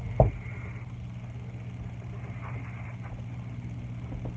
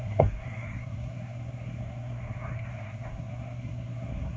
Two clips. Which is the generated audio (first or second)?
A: second